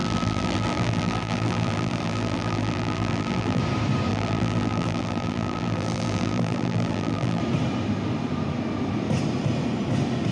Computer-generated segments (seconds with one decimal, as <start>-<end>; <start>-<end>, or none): 0.0-3.6; 4.1-7.4